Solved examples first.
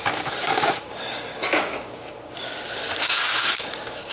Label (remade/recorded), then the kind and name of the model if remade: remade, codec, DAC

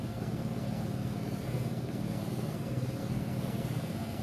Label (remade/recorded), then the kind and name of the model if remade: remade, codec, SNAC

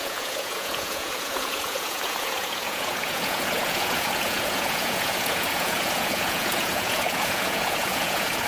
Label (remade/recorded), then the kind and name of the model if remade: remade, vocoder, Vocos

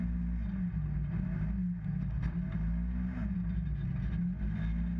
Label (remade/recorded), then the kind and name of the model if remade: recorded